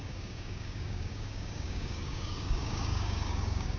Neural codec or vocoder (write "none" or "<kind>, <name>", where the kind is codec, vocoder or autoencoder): codec, DAC